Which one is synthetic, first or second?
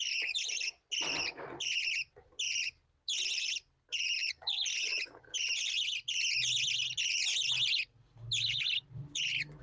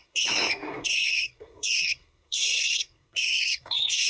second